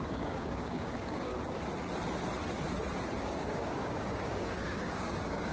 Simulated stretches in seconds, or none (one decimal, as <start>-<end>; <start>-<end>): 0.0-1.3; 3.2-5.5